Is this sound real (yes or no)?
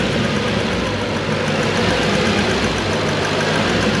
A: yes